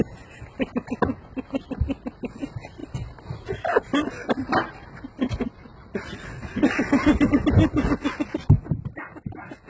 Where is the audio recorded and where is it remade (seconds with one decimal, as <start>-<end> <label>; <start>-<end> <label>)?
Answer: 0.0-2.8 recorded; 2.8-6.8 remade; 6.8-9.7 recorded